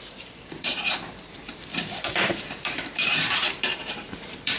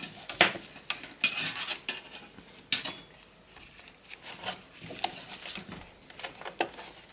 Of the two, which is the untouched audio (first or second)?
second